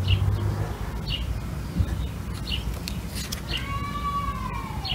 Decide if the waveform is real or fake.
real